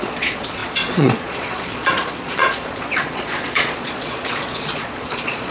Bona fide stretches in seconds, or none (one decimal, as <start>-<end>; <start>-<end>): none